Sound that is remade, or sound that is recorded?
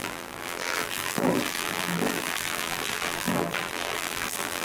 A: remade